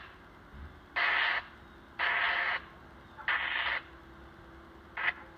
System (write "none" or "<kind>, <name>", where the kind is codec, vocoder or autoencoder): none